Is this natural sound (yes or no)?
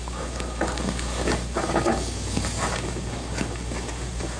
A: no